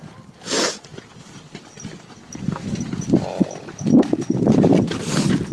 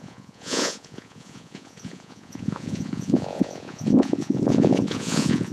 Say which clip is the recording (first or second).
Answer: first